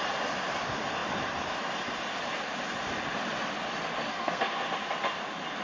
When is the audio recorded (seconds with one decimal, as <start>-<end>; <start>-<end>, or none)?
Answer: 0.0-4.1; 4.7-5.6